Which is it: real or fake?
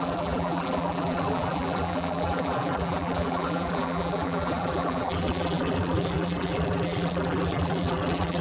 fake